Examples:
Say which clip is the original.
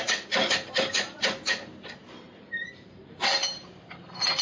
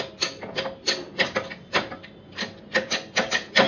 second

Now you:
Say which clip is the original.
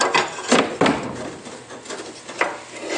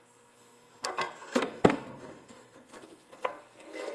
first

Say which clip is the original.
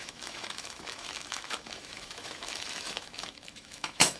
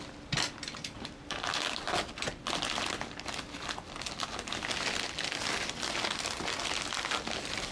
second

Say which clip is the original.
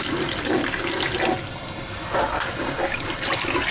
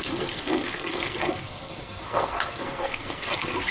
first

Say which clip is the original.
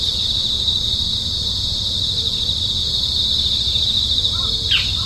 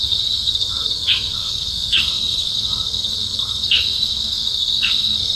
first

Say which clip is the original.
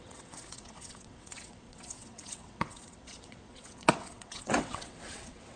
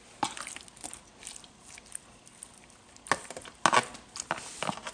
second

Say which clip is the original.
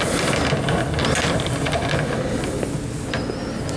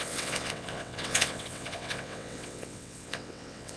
first